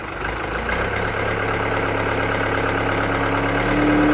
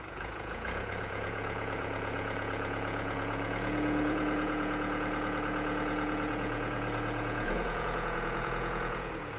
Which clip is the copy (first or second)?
second